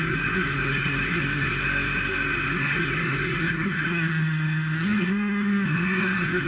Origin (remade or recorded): remade